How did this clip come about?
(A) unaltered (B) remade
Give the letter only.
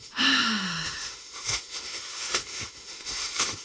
B